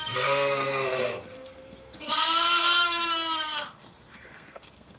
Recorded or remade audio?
remade